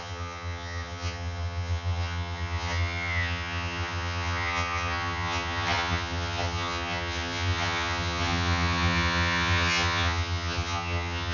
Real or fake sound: fake